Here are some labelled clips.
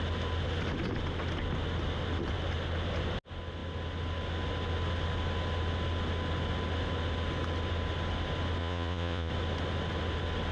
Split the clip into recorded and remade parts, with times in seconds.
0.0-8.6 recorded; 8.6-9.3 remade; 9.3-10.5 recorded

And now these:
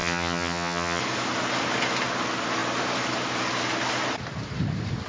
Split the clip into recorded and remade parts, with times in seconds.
0.0-1.0 remade; 1.0-5.1 recorded

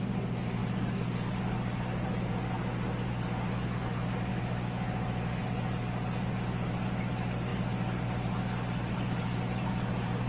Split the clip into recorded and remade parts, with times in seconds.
0.0-4.3 recorded; 4.3-5.4 remade; 5.4-10.3 recorded

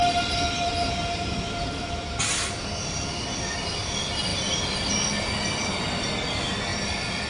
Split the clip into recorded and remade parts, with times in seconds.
0.0-6.7 recorded; 6.7-7.3 remade